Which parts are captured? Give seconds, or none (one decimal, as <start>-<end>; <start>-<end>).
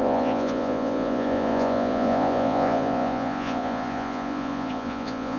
none